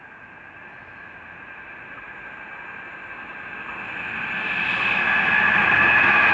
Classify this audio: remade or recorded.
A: recorded